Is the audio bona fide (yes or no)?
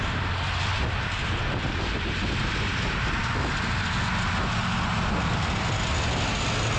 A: yes